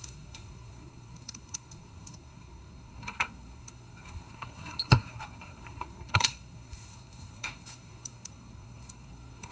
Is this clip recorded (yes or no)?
no